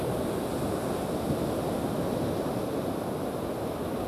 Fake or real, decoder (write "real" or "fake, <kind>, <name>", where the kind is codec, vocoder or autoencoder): real